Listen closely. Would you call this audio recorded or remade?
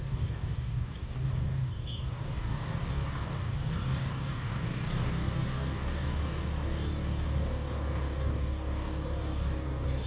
remade